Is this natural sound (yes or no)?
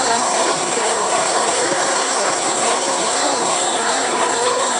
no